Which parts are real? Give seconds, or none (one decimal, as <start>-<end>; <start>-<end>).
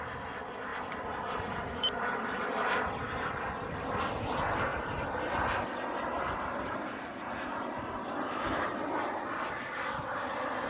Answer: 0.0-0.7; 4.0-10.7